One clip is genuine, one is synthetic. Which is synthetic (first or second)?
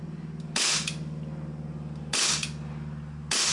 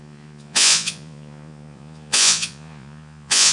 second